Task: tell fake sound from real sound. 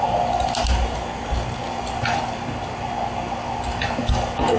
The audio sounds real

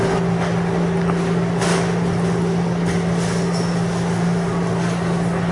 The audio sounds real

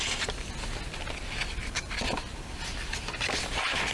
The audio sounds real